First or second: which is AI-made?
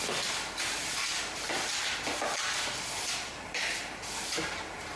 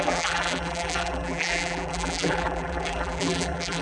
second